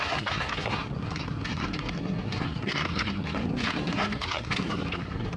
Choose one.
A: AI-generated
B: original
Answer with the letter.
A